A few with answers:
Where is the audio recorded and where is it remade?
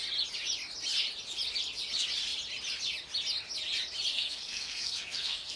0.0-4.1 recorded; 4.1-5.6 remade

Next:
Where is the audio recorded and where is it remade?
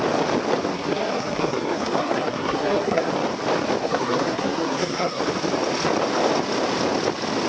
0.0-0.7 recorded; 0.7-3.1 remade; 3.1-3.8 recorded; 3.8-5.2 remade; 5.2-7.5 recorded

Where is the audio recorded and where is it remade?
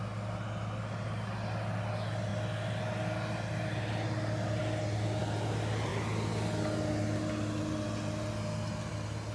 0.0-9.3 recorded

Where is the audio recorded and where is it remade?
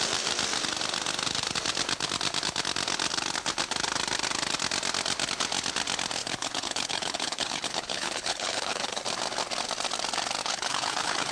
0.0-6.2 recorded; 6.2-9.0 remade; 9.0-10.4 recorded; 10.4-11.3 remade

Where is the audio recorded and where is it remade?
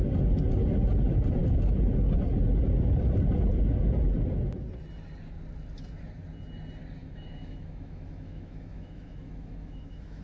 0.0-7.0 recorded; 7.0-10.2 remade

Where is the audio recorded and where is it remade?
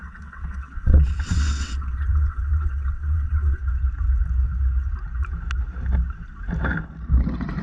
0.0-3.6 remade; 3.6-7.6 recorded